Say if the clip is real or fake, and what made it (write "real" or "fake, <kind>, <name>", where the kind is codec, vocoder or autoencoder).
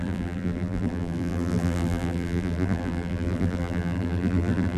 fake, vocoder, BigVGAN v2